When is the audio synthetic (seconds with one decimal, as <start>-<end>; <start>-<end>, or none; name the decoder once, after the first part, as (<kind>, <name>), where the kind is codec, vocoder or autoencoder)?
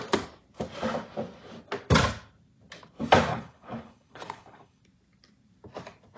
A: 3.3-4.8 (codec, HILCodec)